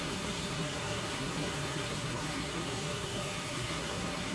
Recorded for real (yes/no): no